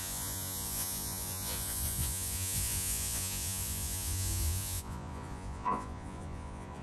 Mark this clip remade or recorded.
remade